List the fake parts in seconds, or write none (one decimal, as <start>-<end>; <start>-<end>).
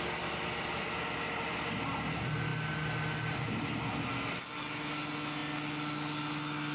none